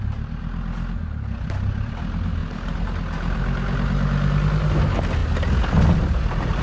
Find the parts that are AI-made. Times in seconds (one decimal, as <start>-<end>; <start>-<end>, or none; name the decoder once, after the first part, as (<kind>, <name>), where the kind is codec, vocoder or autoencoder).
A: none